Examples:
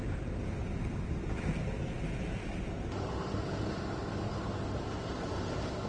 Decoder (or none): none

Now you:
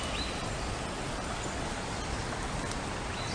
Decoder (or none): none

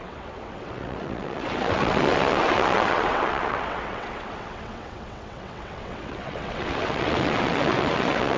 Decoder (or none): vocoder, WaveNeXt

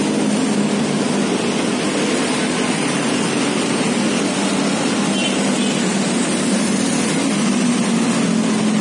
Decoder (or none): none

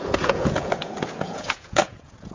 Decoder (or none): vocoder, Vocos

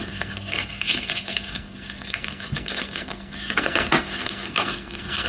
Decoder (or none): codec, SNAC